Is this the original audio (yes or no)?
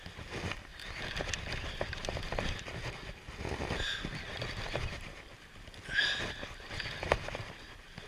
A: yes